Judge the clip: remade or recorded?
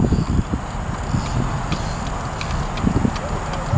recorded